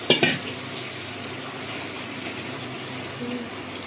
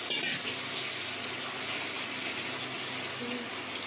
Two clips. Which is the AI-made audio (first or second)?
first